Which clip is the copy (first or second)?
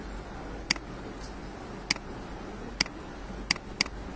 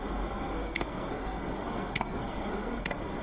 second